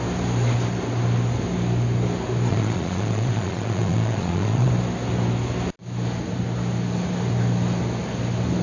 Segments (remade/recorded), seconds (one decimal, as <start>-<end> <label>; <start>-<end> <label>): 0.0-2.5 recorded; 2.5-4.7 remade; 4.7-8.6 recorded